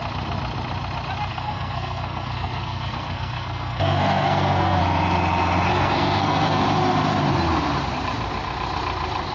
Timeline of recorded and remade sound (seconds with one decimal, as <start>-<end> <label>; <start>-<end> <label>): 0.0-1.3 recorded; 1.3-4.8 remade; 4.8-5.7 recorded; 5.7-6.6 remade; 6.6-9.3 recorded